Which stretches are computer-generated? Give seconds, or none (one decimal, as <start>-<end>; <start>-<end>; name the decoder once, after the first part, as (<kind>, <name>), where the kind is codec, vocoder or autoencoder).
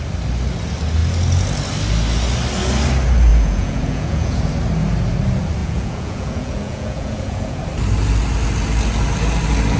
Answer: 3.3-4.4 (vocoder, Vocos); 5.6-7.6